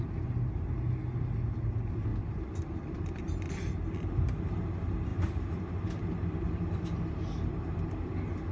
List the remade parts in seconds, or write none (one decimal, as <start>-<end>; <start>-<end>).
2.1-3.2; 5.1-7.1